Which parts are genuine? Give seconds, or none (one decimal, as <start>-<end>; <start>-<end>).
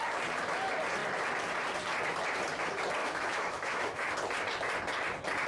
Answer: 0.0-3.0; 4.1-5.5